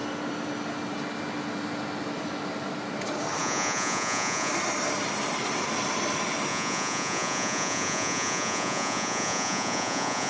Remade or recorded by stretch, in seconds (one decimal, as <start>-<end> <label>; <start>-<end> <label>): 0.0-3.4 recorded; 3.4-4.5 remade; 4.5-6.5 recorded; 6.5-10.3 remade